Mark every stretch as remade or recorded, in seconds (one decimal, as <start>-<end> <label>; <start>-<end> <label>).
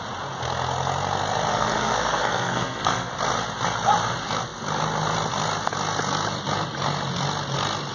0.0-1.5 recorded; 1.5-3.1 remade; 3.1-7.9 recorded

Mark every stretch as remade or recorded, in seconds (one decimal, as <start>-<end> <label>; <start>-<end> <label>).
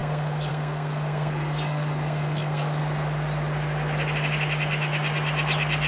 0.0-2.8 remade; 2.8-5.9 recorded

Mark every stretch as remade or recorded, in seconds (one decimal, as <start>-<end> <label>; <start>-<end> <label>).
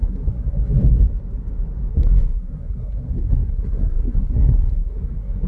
0.0-0.8 remade; 0.8-1.9 recorded; 1.9-5.5 remade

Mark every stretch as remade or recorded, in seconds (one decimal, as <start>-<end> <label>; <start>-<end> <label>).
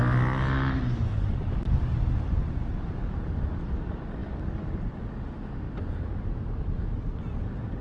0.0-7.8 recorded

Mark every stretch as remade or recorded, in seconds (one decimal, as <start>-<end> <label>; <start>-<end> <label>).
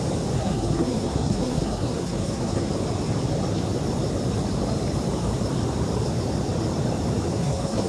0.0-0.4 recorded; 0.4-2.7 remade; 2.7-7.3 recorded; 7.3-7.9 remade